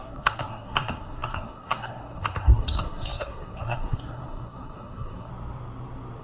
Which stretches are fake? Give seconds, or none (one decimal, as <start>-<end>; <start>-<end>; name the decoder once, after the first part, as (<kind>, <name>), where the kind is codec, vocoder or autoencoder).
0.0-5.3 (codec, SNAC)